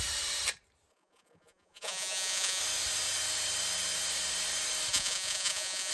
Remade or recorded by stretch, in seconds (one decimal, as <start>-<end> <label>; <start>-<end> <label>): 0.0-0.9 recorded; 0.9-2.6 remade; 2.6-4.9 recorded; 4.9-5.9 remade